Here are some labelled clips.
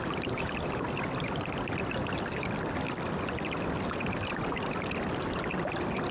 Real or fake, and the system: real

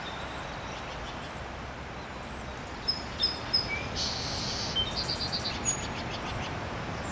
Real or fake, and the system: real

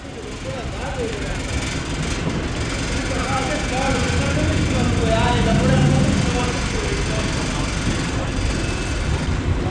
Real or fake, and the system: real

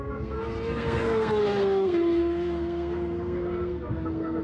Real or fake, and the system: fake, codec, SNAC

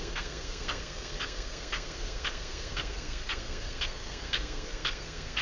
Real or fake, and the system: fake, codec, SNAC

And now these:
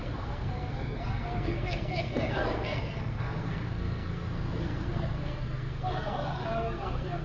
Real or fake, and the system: fake, codec, SNAC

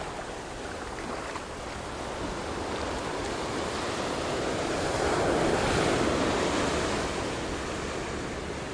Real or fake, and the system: real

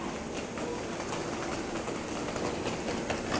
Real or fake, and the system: real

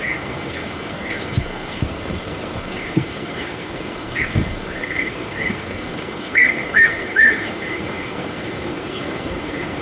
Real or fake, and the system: fake, codec, SNAC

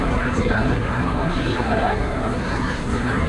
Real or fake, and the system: fake, codec, SNAC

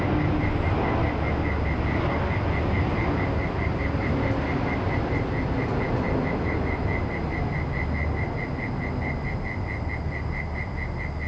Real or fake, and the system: real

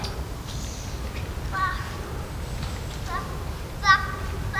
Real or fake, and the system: real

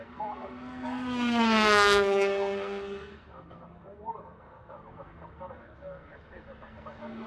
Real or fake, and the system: fake, codec, SNAC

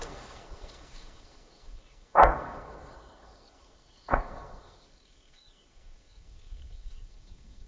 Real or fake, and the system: fake, codec, SNAC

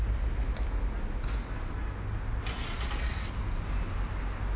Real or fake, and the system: real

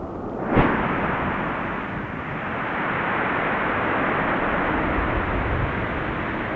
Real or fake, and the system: real